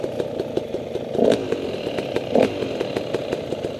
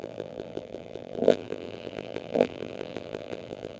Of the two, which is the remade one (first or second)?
second